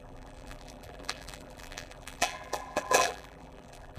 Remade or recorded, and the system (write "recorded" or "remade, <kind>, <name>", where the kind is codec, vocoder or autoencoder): remade, vocoder, BigVGAN v2